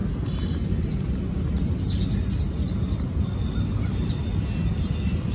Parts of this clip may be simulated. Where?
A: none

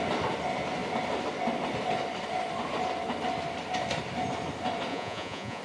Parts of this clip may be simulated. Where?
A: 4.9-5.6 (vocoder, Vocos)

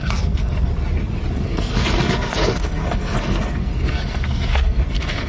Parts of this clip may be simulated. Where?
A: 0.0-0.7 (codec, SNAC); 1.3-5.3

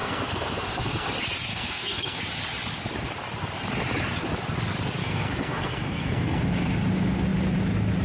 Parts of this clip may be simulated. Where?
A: 0.0-1.1 (codec, SNAC); 1.5-2.2; 5.0-6.4

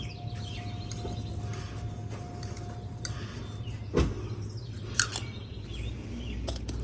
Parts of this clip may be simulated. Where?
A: none

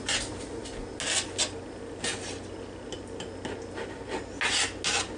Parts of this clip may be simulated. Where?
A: none

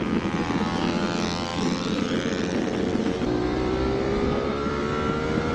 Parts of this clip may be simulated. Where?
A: 1.5-4.8 (vocoder, BigVGAN v2)